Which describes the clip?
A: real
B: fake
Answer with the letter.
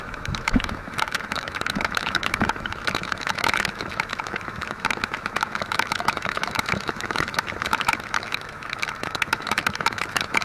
B